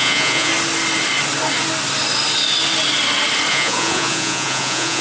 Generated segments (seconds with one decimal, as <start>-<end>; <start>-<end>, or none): 0.0-0.5; 3.5-5.0